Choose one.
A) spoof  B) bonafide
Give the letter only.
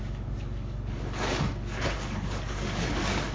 A